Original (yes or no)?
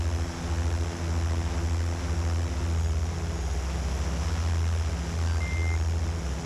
yes